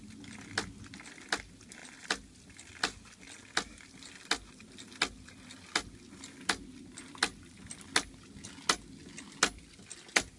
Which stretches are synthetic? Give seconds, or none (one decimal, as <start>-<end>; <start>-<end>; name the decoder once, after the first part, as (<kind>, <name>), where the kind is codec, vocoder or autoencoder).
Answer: none